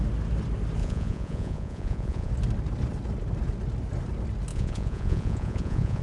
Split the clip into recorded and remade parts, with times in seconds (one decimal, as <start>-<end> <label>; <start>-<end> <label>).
0.0-0.8 recorded; 0.8-2.3 remade; 2.3-4.5 recorded; 4.5-6.0 remade